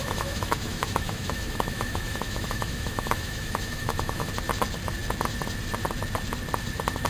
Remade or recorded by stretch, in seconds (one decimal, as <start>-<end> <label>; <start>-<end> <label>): 0.0-4.3 remade; 4.3-7.1 recorded